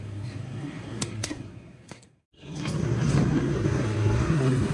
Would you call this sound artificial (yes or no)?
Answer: yes